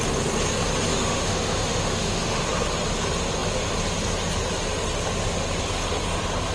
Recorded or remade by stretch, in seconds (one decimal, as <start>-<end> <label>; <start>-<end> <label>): 0.0-0.9 recorded; 0.9-2.4 remade; 2.4-6.5 recorded